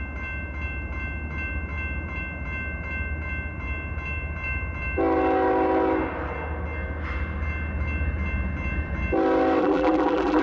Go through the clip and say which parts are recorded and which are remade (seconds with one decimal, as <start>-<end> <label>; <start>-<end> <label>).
0.0-9.6 recorded; 9.6-10.4 remade